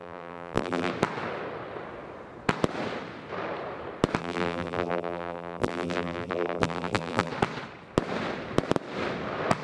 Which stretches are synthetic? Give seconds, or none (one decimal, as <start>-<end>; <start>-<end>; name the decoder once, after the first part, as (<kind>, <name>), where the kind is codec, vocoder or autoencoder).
0.0-0.9 (vocoder, BigVGAN v2); 4.2-7.3